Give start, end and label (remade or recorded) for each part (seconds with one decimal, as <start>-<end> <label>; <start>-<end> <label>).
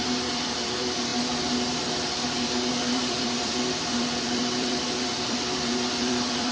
0.0-1.1 remade; 1.1-2.7 recorded; 2.7-6.5 remade